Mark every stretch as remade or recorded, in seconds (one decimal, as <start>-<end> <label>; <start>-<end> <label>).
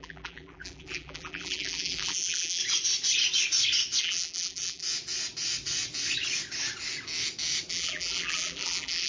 0.0-2.6 remade; 2.6-4.0 recorded; 4.0-4.8 remade; 4.8-7.7 recorded; 7.7-9.1 remade